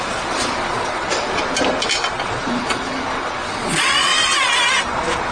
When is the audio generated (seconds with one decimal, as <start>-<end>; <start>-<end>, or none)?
0.0-1.4; 2.6-4.1